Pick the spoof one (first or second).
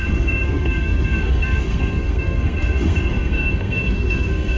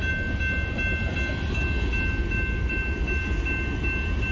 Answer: first